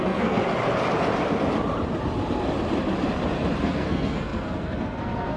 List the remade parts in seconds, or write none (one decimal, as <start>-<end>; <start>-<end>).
0.0-0.4; 3.6-5.4

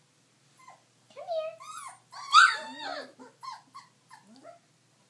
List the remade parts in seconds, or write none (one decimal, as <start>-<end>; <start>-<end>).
none

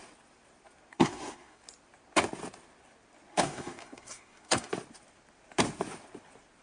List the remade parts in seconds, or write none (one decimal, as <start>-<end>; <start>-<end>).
0.9-1.6; 3.3-4.7